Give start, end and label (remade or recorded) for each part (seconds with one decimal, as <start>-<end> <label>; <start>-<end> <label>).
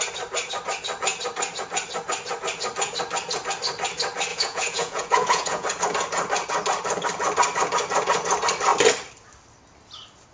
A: 0.0-4.3 recorded; 4.3-5.8 remade; 5.8-10.3 recorded